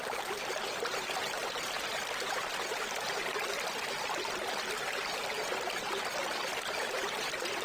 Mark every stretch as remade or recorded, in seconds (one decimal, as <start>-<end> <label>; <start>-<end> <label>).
0.0-7.6 recorded